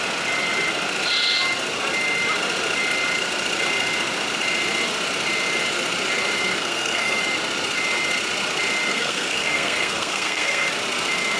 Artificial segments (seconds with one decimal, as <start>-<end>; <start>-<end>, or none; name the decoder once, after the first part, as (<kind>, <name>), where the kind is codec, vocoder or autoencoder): 6.6-7.2 (codec, SNAC); 8.9-10.7